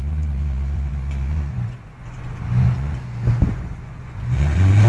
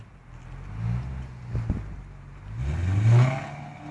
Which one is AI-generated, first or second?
first